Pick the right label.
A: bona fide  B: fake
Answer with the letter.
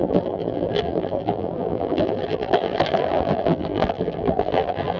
B